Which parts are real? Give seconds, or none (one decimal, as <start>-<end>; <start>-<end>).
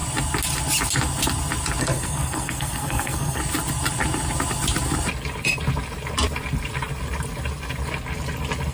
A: 0.0-1.8; 3.4-8.7